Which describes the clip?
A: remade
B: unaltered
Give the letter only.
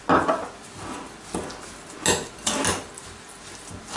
B